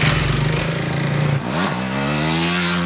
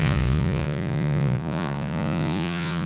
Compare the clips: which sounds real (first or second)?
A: first